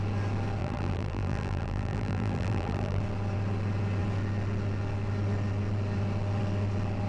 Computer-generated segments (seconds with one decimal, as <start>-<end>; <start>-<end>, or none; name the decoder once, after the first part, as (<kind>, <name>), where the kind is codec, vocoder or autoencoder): 0.6-3.0 (vocoder, BigVGAN v2)